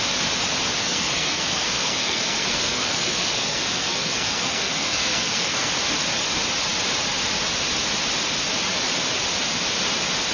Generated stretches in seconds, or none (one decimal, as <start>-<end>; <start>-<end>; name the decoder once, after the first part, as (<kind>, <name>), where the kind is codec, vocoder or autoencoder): 0.8-5.7 (codec, SNAC)